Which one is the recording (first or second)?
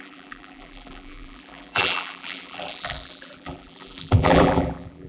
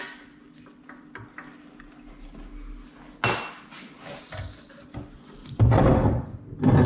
second